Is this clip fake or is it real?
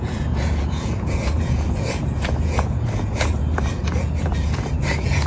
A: fake